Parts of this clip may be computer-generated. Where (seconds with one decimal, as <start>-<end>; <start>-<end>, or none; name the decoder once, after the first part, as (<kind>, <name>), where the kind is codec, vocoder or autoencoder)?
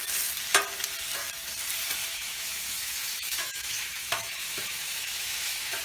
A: 2.0-5.8 (autoencoder, DAC-VAE)